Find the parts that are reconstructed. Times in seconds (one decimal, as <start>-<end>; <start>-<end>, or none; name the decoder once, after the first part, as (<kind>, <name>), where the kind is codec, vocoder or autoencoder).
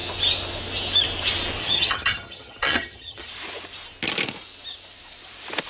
1.6-3.3 (vocoder, HiFi-GAN)